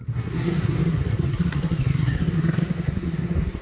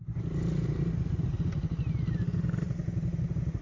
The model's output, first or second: first